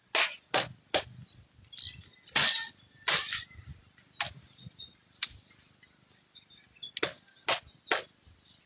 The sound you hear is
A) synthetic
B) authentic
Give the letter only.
B